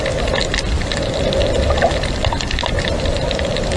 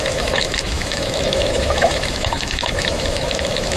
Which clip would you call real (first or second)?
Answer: first